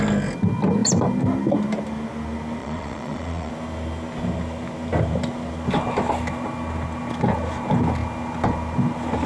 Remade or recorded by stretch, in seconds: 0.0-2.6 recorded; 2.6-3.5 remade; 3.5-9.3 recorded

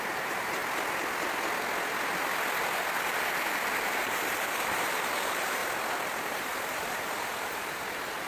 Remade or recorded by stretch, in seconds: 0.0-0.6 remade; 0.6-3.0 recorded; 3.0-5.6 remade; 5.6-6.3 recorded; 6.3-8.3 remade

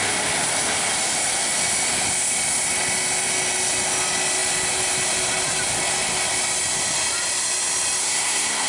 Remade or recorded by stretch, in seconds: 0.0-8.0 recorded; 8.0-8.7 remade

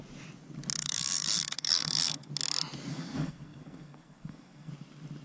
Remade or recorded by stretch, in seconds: 0.0-0.8 recorded; 0.8-2.3 remade; 2.3-2.9 recorded; 2.9-4.7 remade; 4.7-5.2 recorded

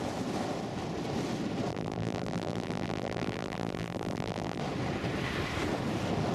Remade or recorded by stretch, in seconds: 0.0-1.7 recorded; 1.7-4.6 remade; 4.6-6.3 recorded

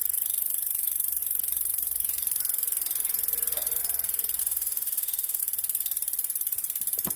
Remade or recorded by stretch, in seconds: 0.0-4.4 recorded; 4.4-5.4 remade; 5.4-7.2 recorded